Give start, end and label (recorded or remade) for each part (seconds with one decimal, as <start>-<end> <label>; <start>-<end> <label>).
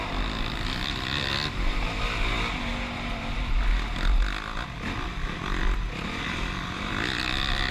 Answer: 0.0-7.7 recorded